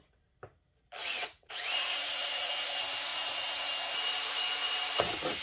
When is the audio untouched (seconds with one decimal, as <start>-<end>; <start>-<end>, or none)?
0.0-1.0; 2.5-3.1; 3.7-5.4